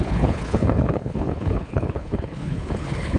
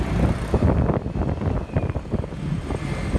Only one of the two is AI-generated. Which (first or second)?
first